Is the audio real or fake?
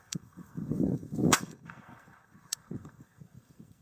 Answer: fake